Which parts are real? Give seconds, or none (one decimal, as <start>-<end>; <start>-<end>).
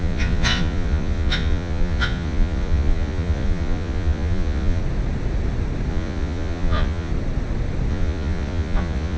4.8-5.9; 7.1-7.9